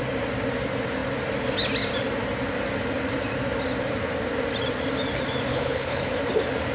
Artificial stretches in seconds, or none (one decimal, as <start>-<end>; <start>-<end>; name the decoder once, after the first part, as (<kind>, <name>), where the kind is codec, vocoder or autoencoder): 5.5-6.1 (codec, HILCodec)

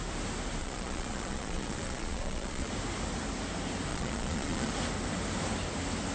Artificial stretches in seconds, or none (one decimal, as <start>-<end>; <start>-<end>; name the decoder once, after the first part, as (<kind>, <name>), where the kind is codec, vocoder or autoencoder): 0.6-2.7 (vocoder, Vocos); 3.9-4.7

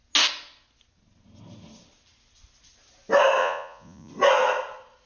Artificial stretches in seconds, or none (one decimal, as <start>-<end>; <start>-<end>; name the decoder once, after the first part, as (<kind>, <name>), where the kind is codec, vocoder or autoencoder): 3.4-4.1 (vocoder, Vocos)

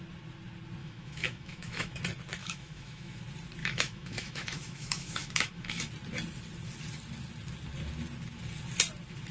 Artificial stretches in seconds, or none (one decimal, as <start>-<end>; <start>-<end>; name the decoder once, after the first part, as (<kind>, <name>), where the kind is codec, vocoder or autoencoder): 0.8-2.0 (autoencoder, DAC-VAE); 2.4-3.2; 3.6-5.9